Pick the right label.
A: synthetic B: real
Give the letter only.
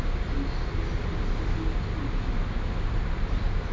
B